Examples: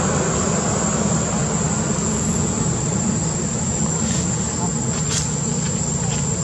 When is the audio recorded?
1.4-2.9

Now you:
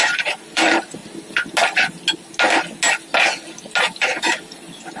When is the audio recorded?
1.0-4.0

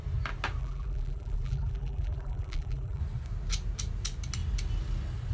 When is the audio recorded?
0.0-0.6; 3.0-5.3

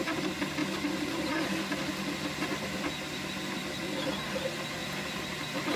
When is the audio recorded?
0.0-4.8

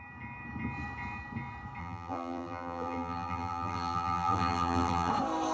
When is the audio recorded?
0.0-1.8; 5.1-5.5

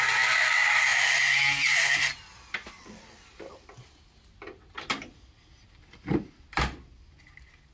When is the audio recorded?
0.0-7.7

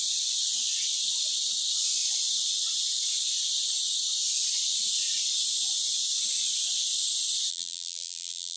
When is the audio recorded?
0.0-7.5